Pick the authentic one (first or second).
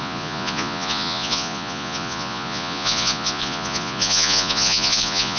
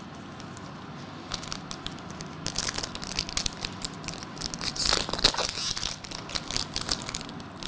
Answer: second